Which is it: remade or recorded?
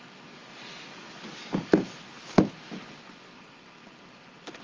recorded